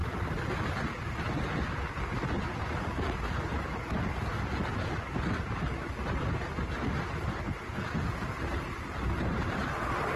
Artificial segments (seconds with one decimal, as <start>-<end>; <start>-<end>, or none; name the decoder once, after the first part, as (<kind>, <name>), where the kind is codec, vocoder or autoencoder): none